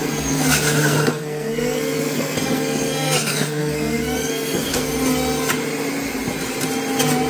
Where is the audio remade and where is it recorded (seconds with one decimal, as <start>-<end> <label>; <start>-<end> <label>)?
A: 0.0-4.9 remade; 4.9-7.3 recorded